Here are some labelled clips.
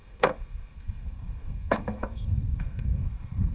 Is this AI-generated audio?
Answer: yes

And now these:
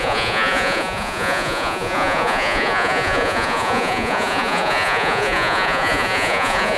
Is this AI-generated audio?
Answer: yes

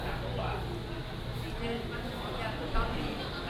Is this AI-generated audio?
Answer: no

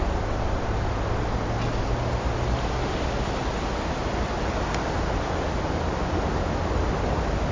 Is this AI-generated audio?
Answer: no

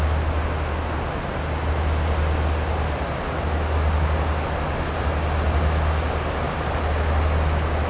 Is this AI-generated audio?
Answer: no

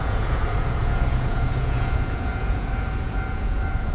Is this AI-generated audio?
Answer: yes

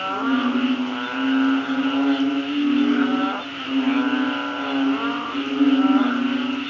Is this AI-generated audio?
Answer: no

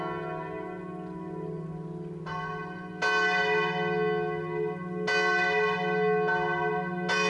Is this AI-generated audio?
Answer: no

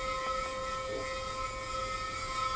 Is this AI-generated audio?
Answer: no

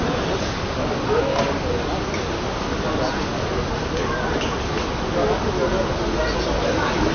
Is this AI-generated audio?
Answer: no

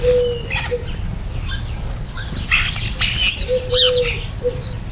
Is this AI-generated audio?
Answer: no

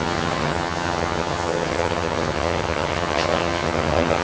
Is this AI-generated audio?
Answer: yes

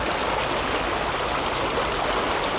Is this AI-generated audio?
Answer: no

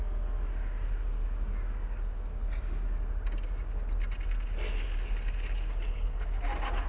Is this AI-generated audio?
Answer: no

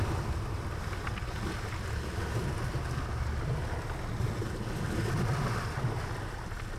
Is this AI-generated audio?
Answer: no